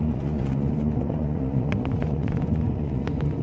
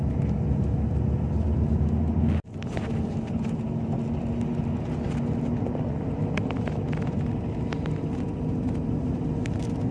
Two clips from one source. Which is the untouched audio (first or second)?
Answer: second